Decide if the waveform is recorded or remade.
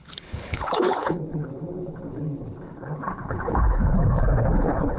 remade